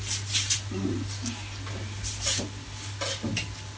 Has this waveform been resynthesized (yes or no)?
no